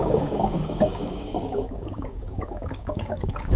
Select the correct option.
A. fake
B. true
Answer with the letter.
A